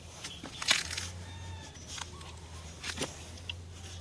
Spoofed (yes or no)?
no